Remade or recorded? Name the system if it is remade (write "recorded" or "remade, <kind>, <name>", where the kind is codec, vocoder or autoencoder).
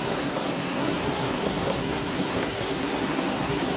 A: remade, codec, SNAC